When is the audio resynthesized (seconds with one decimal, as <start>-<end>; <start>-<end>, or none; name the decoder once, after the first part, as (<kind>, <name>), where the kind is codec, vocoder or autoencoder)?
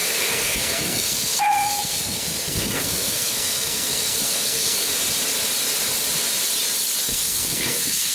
0.0-4.9 (codec, SNAC); 7.0-8.1